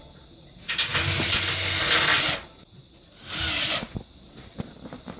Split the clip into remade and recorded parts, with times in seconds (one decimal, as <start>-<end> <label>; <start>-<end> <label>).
0.0-5.2 recorded